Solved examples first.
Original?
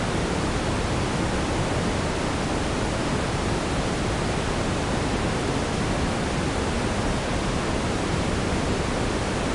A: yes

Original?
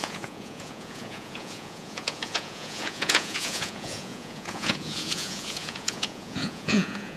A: no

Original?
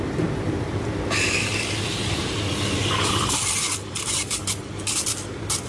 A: no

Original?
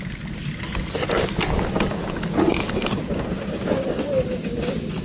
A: yes